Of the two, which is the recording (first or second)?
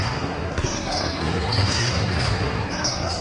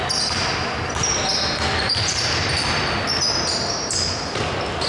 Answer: second